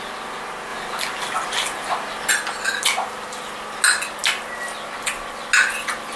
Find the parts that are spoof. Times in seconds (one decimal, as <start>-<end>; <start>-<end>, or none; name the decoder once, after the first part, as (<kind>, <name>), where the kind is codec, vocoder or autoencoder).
none